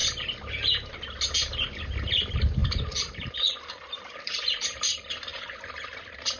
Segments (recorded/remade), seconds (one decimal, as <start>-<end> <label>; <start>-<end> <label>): 0.0-6.4 recorded